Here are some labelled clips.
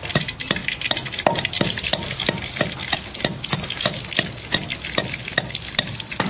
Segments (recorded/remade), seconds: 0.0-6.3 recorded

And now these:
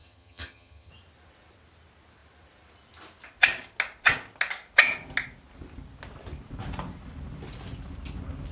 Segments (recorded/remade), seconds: 0.0-0.9 remade; 0.9-8.5 recorded

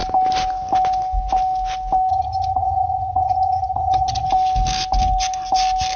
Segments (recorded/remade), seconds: 0.0-2.1 recorded; 2.1-4.3 remade; 4.3-6.0 recorded

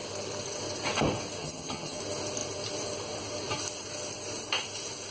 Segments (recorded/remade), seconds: 0.0-1.4 recorded; 1.4-2.0 remade; 2.0-5.1 recorded

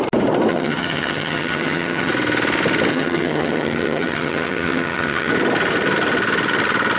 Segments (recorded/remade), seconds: 0.0-0.5 recorded; 0.5-2.1 remade; 2.1-2.9 recorded; 2.9-5.3 remade; 5.3-7.0 recorded

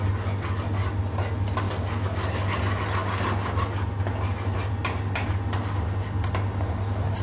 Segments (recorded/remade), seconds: 0.0-7.2 recorded